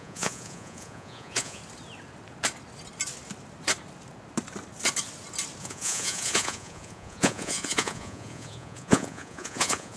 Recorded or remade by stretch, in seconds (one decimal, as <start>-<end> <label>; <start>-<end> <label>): 0.0-1.6 remade; 1.6-5.6 recorded; 5.6-10.0 remade